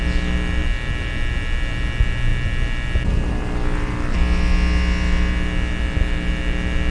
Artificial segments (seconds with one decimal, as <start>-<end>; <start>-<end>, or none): none